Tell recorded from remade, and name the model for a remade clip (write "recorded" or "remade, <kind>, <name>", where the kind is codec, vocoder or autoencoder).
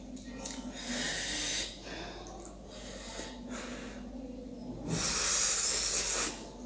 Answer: recorded